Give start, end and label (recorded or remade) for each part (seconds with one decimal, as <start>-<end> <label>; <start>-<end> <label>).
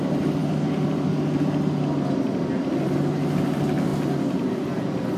0.0-0.4 recorded; 0.4-1.4 remade; 1.4-5.2 recorded